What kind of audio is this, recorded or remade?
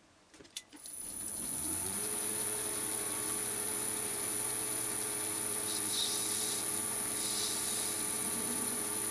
remade